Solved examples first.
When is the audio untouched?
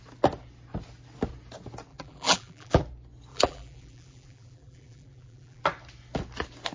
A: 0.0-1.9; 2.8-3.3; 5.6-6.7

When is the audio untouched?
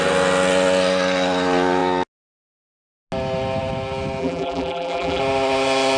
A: 0.0-4.2; 5.2-6.0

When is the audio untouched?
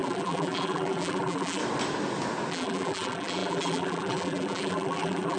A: 1.6-2.5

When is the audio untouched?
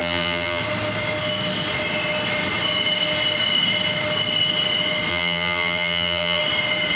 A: 0.6-5.1; 6.4-7.0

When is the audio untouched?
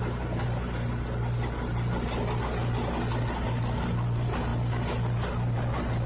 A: 0.0-6.1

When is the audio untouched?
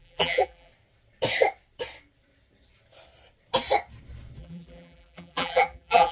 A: 0.7-4.4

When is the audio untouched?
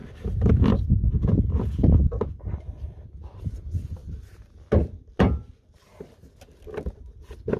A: 0.5-7.6